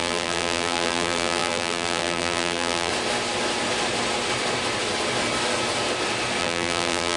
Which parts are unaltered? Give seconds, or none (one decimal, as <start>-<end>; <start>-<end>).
2.9-6.4